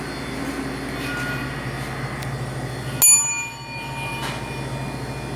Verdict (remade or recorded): recorded